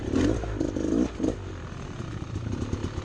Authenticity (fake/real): real